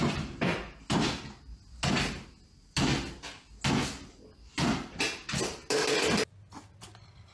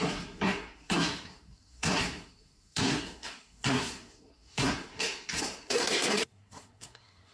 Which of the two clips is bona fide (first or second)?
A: first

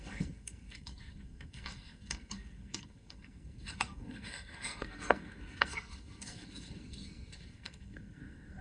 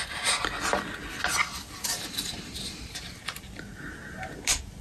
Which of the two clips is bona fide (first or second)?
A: second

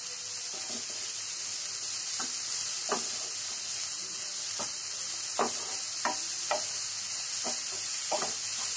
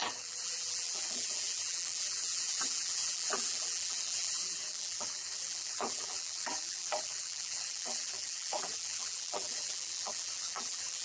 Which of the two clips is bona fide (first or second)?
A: first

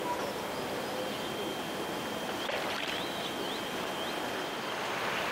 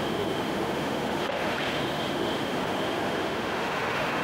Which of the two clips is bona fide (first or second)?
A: first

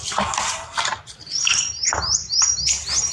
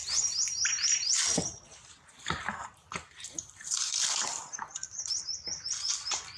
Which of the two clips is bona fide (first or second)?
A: first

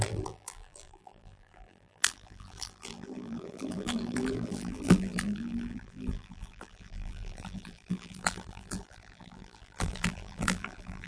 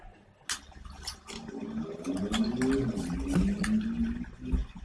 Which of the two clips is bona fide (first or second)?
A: second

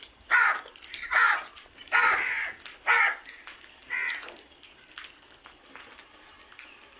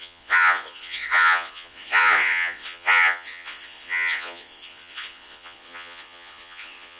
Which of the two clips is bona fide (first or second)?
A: first